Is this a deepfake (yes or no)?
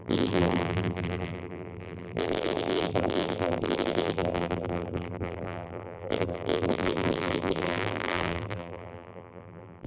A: yes